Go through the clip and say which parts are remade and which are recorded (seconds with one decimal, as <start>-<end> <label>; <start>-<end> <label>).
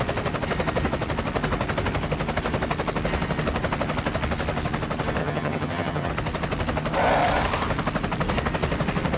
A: 0.0-5.2 recorded; 5.2-6.1 remade; 6.1-9.2 recorded